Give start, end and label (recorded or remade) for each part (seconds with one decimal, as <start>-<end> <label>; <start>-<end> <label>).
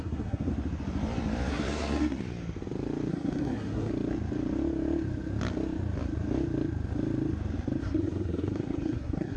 0.0-0.5 remade; 0.5-1.5 recorded; 1.5-2.2 remade; 2.2-3.1 recorded; 3.1-3.9 remade; 3.9-7.8 recorded; 7.8-9.4 remade